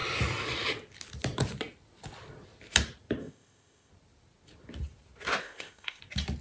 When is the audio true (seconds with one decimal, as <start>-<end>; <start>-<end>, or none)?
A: 0.0-3.2; 3.9-5.4; 6.0-6.4